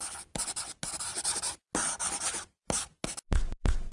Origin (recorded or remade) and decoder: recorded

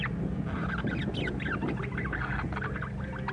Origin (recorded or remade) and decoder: recorded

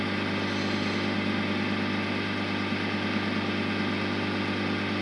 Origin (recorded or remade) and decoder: recorded